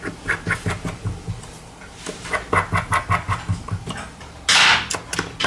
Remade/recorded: recorded